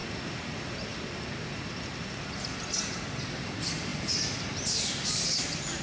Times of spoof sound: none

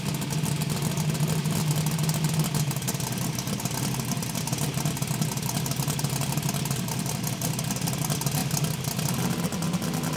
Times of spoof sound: none

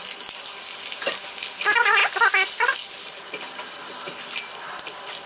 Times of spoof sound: none

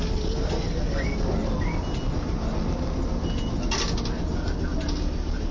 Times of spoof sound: none

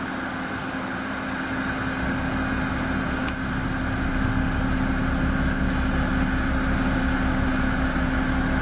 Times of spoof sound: 4.1-4.6

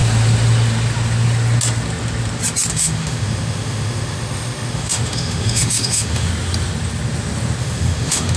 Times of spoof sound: 2.7-6.3; 7.6-8.4

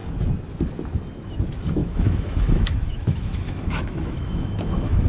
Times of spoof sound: 1.8-5.1

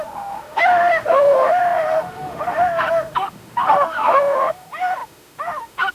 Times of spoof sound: 0.0-5.9